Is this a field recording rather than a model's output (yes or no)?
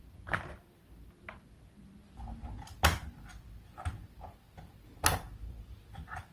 yes